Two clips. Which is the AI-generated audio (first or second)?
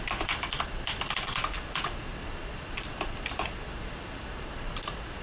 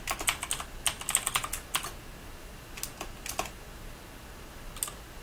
first